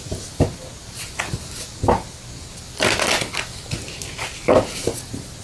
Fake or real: real